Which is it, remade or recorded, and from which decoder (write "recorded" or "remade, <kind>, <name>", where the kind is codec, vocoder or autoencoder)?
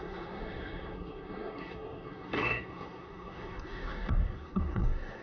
remade, codec, SNAC